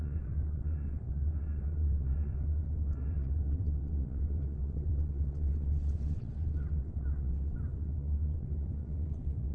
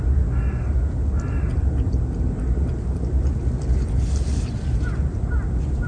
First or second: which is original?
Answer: second